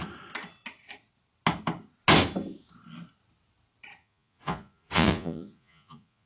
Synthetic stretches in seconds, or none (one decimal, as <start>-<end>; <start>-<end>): 4.0-6.3